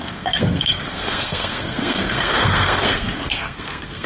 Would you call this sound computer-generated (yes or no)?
yes